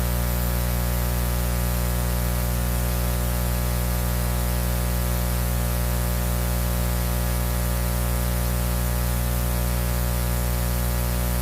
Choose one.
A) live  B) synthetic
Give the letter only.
A